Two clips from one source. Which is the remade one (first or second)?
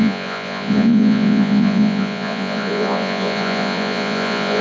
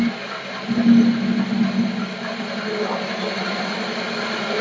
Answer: first